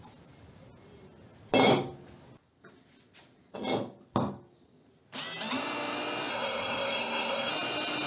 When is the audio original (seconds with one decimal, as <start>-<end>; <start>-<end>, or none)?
0.0-6.3; 7.5-8.1